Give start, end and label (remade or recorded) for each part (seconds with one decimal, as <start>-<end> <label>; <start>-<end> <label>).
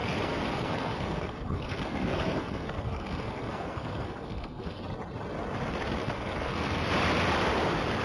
0.0-4.8 remade; 4.8-6.0 recorded; 6.0-6.9 remade; 6.9-8.0 recorded